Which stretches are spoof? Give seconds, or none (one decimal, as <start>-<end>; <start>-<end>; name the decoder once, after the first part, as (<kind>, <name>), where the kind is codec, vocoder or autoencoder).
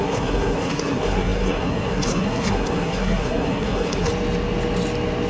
0.0-4.1 (codec, SNAC)